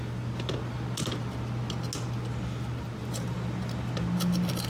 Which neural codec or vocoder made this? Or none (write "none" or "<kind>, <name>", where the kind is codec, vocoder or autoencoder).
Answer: none